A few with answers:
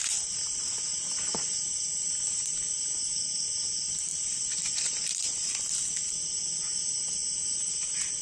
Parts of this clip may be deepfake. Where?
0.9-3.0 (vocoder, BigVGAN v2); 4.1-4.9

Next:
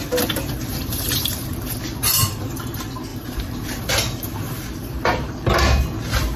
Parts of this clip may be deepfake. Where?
0.7-1.5 (vocoder, BigVGAN v2); 3.1-3.8

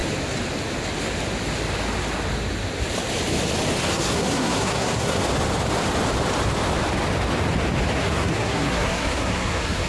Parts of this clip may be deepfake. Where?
3.9-5.2 (codec, SNAC); 8.0-9.9

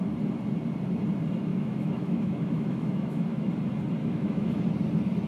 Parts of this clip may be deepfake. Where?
1.5-3.5 (autoencoder, DAC-VAE); 4.0-4.6

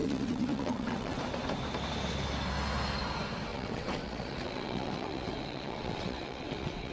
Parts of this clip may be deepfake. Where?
0.0-1.2 (vocoder, WaveNeXt); 3.5-6.9